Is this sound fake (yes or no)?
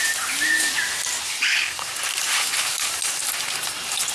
no